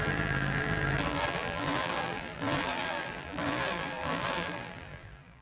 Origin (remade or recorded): remade